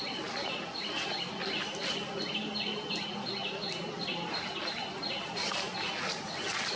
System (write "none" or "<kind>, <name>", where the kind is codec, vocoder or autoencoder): none